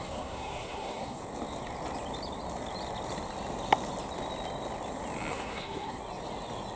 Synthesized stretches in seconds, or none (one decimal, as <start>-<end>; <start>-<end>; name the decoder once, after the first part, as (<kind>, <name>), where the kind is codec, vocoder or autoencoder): 0.0-1.2 (codec, SNAC); 5.3-6.0